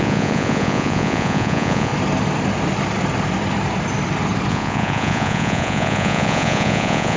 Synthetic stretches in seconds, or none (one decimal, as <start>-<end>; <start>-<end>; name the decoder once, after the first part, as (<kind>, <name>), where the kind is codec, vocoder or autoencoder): 0.0-1.9 (vocoder, Vocos); 4.5-7.2

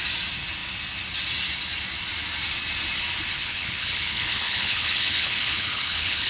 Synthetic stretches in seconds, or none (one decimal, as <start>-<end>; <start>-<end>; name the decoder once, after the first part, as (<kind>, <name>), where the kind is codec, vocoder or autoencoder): 3.3-6.3 (codec, HILCodec)

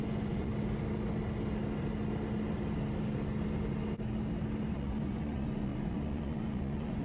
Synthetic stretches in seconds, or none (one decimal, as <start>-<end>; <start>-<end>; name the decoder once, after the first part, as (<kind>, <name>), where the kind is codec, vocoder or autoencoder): 0.0-0.5 (vocoder, Vocos); 4.7-7.0

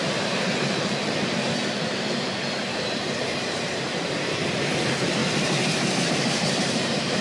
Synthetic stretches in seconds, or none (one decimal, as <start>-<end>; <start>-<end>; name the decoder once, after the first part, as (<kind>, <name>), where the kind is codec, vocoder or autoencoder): 0.0-7.2 (vocoder, BigVGAN v2)

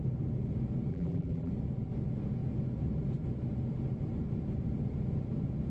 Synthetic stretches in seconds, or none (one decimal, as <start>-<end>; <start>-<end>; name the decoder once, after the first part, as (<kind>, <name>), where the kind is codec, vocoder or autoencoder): 0.9-1.5 (vocoder, BigVGAN v2)

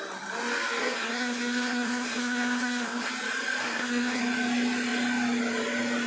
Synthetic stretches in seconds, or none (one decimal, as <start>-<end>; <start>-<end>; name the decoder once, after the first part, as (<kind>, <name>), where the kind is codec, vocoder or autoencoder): 0.8-3.1 (codec, SNAC); 3.6-4.2

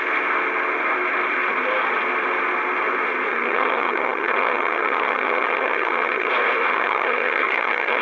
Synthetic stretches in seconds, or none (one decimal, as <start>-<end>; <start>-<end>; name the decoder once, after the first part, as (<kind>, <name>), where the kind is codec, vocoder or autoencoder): 3.3-6.3 (vocoder, HiFi-GAN); 6.7-8.0

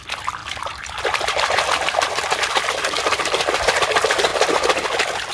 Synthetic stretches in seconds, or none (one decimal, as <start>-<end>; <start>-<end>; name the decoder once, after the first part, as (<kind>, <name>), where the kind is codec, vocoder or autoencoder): 0.0-4.3 (vocoder, BigVGAN v2)